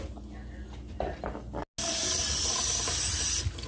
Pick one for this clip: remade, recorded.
recorded